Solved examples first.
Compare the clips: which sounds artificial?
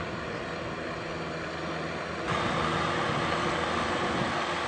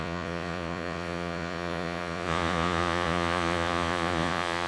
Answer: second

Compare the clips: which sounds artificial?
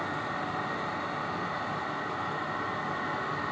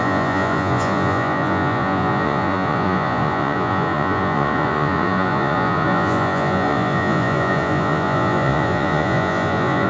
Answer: second